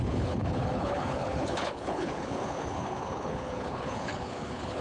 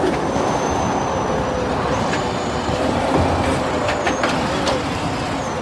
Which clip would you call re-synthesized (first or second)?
first